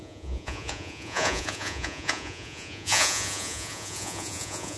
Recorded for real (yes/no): no